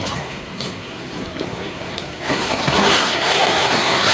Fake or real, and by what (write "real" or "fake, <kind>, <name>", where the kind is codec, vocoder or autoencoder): fake, codec, SNAC